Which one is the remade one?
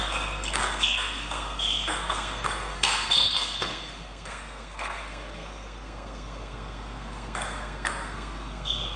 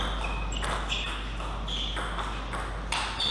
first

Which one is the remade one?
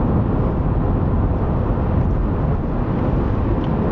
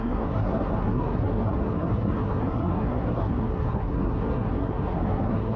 second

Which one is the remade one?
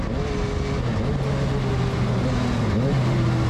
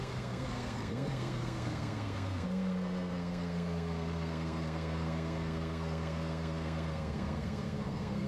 second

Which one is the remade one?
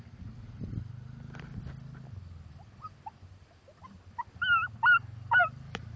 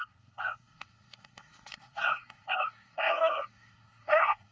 second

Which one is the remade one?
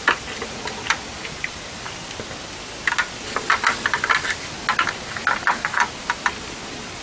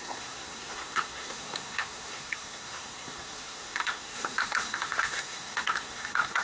second